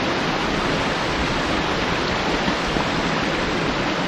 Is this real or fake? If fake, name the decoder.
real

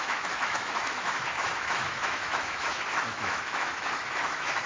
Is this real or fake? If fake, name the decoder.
fake, autoencoder, DAC-VAE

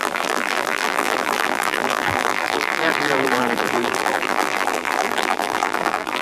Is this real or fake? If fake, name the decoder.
fake, vocoder, BigVGAN v2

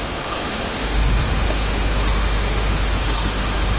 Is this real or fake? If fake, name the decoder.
fake, autoencoder, DAC-VAE